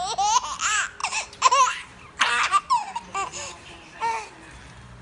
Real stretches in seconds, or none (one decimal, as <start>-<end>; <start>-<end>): 0.0-1.0; 4.0-5.0